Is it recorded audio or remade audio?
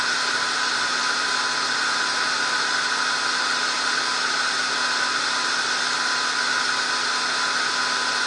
recorded